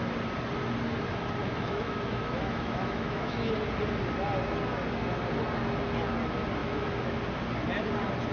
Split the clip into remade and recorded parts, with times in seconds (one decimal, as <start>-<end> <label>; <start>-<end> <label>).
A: 0.0-1.4 recorded; 1.4-3.5 remade; 3.5-6.6 recorded; 6.6-7.2 remade; 7.2-8.3 recorded